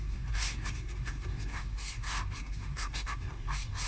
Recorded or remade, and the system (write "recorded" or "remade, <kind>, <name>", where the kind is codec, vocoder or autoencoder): remade, codec, SNAC